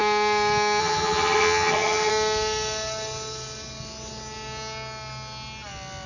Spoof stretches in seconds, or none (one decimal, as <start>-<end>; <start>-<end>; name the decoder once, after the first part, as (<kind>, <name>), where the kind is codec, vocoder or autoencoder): 0.8-2.1 (vocoder, HiFi-GAN)

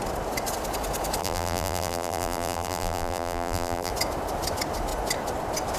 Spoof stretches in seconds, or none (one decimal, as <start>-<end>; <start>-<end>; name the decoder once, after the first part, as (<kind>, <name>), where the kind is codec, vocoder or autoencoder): 1.2-3.9 (vocoder, BigVGAN v2)

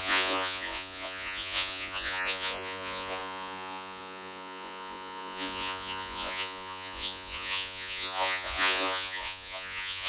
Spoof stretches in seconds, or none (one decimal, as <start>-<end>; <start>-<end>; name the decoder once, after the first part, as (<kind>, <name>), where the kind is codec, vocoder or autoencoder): 0.0-10.1 (vocoder, Vocos)

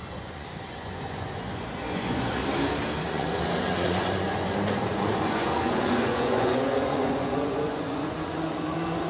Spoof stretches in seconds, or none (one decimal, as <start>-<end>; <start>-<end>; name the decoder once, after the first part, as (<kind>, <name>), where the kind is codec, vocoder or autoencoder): 0.0-2.4 (vocoder, Vocos); 3.1-9.1

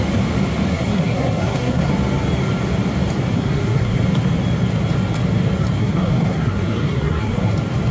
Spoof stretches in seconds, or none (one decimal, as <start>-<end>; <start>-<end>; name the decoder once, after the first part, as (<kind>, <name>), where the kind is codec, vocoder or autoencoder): 0.7-1.9 (codec, SNAC); 3.3-4.0; 5.8-7.5

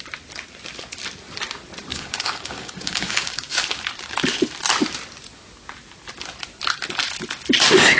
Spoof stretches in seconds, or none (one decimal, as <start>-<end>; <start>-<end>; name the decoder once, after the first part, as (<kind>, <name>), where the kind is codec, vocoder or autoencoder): 1.9-3.8 (codec, DAC)

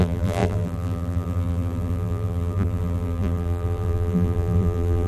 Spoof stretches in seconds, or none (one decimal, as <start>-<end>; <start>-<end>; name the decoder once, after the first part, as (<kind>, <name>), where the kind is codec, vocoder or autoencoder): 0.0-5.1 (vocoder, BigVGAN v2)

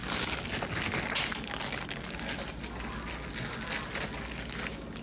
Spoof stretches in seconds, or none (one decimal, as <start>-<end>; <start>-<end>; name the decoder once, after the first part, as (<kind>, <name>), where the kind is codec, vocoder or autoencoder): none